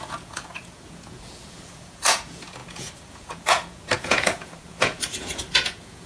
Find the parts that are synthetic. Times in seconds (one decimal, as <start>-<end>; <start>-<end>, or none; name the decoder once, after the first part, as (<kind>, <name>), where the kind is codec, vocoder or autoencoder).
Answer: 0.0-6.1 (vocoder, Vocos)